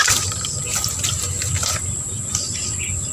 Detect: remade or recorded recorded